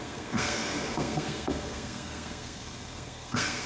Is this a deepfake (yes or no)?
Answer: yes